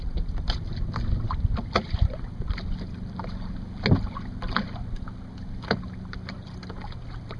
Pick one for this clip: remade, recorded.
recorded